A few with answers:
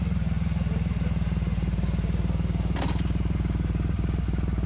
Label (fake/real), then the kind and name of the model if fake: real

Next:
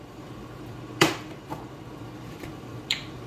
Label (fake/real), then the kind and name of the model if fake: fake, vocoder, BigVGAN v2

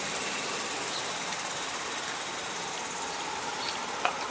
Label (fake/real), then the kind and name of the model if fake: real